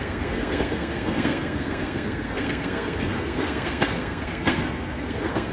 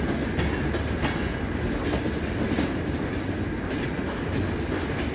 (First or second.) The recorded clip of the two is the second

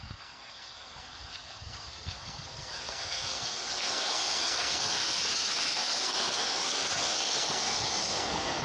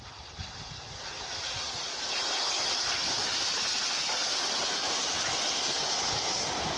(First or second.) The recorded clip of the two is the second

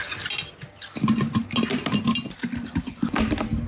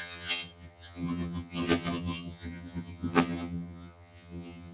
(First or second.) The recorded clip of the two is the first